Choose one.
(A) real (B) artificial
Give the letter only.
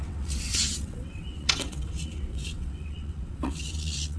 B